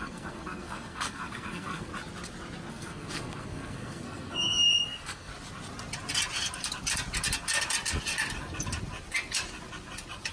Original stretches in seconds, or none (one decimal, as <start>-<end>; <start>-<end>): 1.9-2.7; 5.3-10.3